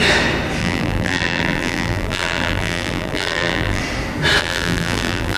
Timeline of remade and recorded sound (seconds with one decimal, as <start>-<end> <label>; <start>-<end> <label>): 0.0-0.6 recorded; 0.6-3.8 remade; 3.8-4.4 recorded; 4.4-5.4 remade